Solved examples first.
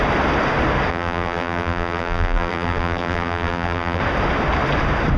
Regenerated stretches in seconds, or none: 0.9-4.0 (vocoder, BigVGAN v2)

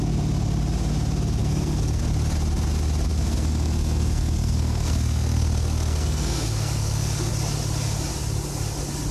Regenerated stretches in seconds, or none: 1.4-2.0 (codec, SNAC); 3.1-7.3

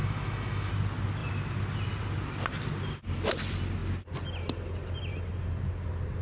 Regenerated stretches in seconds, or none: 0.0-0.7 (autoencoder, DAC-VAE)